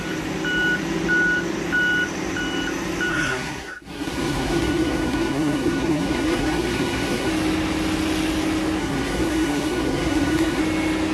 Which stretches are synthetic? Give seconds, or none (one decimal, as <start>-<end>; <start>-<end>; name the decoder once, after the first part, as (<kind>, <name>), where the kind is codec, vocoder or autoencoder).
3.1-7.3 (codec, SNAC); 8.8-10.6